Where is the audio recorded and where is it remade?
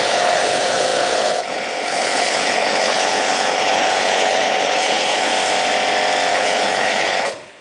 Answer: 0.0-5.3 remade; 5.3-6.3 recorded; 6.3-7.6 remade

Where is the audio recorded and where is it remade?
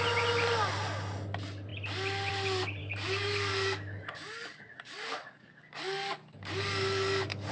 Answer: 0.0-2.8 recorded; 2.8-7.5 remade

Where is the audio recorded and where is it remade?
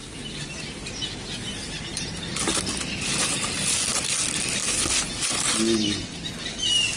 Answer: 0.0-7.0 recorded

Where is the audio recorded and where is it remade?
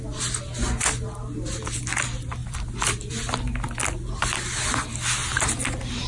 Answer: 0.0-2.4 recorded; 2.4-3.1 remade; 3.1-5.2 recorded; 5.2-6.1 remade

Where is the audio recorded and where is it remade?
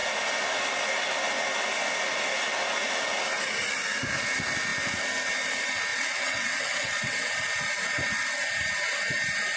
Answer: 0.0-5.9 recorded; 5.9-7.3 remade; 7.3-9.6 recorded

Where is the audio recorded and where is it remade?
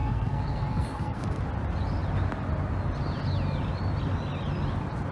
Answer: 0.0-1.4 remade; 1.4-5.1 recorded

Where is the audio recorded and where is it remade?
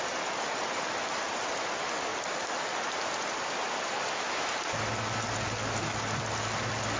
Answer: 0.0-7.0 recorded